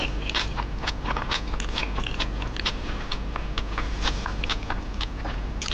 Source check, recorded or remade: recorded